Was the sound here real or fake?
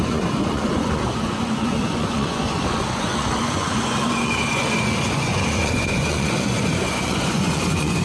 fake